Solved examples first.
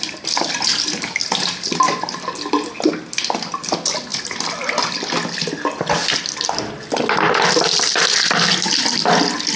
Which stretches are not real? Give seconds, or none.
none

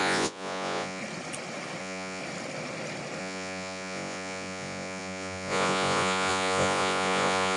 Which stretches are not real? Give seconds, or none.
0.0-1.0 (vocoder, Vocos); 1.8-2.2; 3.2-7.6

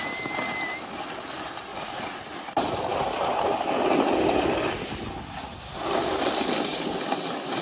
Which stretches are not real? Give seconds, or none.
1.7-2.2 (vocoder, Vocos)

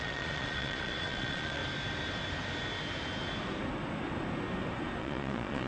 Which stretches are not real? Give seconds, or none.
0.0-1.6 (vocoder, Vocos); 5.0-5.7

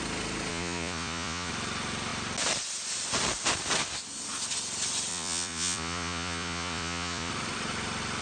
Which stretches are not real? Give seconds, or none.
0.5-1.5 (vocoder, Vocos); 5.1-7.3

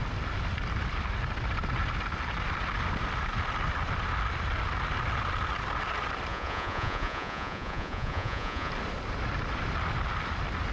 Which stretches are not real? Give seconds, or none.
6.3-8.7 (vocoder, Vocos)

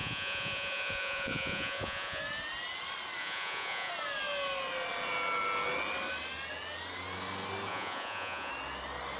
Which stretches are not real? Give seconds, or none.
0.0-2.2 (vocoder, Vocos); 3.2-3.9; 7.7-8.5